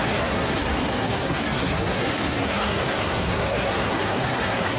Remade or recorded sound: remade